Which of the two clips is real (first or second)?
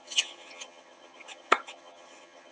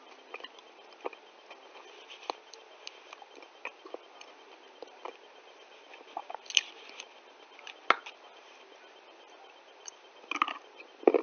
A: second